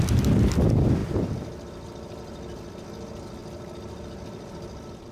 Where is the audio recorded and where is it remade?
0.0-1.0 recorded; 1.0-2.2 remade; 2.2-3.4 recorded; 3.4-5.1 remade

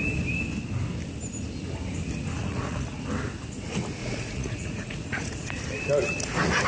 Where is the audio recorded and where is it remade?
0.0-2.4 recorded; 2.4-3.0 remade; 3.0-4.0 recorded; 4.0-5.5 remade; 5.5-6.7 recorded

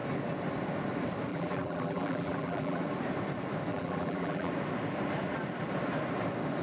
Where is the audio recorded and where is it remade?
0.0-1.3 recorded; 1.3-2.8 remade; 2.8-3.7 recorded; 3.7-4.5 remade; 4.5-6.6 recorded

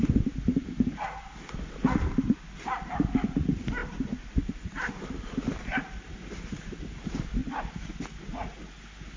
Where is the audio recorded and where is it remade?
0.0-3.8 recorded; 3.8-6.7 remade; 6.7-9.2 recorded